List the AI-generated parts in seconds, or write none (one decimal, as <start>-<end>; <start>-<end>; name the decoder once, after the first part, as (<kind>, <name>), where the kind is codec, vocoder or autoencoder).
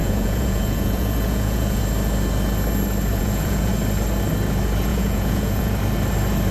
0.0-1.8 (vocoder, Vocos); 3.1-3.7; 4.9-5.8